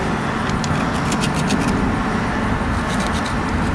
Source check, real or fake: real